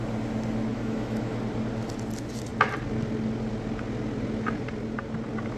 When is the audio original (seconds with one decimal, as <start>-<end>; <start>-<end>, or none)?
0.0-0.7; 1.4-5.6